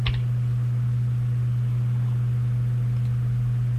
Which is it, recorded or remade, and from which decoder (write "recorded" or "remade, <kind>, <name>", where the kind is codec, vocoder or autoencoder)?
recorded